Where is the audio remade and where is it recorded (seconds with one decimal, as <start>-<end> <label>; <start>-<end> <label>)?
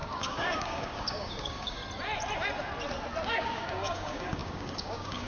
0.0-1.8 remade; 1.8-3.3 recorded; 3.3-5.3 remade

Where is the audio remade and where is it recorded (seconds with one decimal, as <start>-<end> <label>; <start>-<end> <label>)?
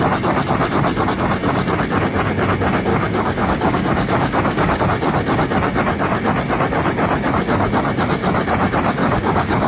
0.0-2.9 recorded; 2.9-4.8 remade; 4.8-9.0 recorded; 9.0-9.7 remade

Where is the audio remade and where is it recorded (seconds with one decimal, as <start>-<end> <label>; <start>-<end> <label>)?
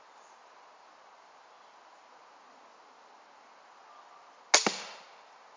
0.0-5.6 recorded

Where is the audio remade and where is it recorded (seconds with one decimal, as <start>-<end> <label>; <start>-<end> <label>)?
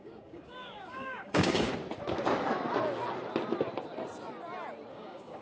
0.0-1.7 remade; 1.7-4.9 recorded; 4.9-5.4 remade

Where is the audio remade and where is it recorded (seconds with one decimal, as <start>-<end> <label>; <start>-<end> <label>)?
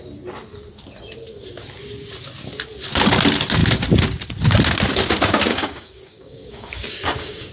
0.0-5.5 recorded; 5.5-7.5 remade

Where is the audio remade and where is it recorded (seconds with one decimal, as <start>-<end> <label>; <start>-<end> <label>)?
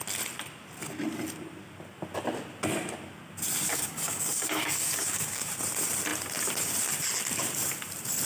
0.0-3.7 recorded; 3.7-5.5 remade; 5.5-8.2 recorded